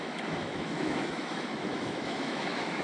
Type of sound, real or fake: fake